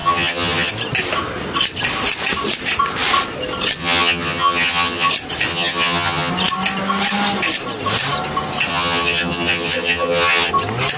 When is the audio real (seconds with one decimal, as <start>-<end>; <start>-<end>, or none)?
0.7-3.8; 5.1-5.5; 6.3-8.7; 10.5-11.0

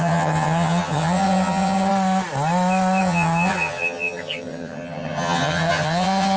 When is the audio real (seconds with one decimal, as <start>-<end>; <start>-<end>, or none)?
1.9-3.0

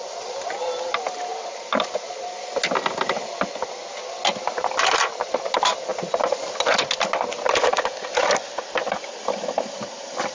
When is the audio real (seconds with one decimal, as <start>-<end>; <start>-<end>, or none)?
0.0-10.3

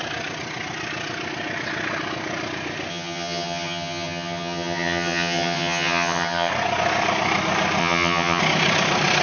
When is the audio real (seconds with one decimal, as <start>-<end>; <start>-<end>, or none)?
0.0-2.9; 6.5-7.8; 8.4-9.2